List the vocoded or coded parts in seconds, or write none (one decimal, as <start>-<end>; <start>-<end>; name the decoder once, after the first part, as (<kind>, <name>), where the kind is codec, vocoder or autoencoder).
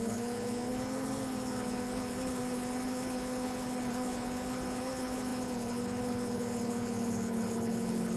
0.0-8.2 (codec, HILCodec)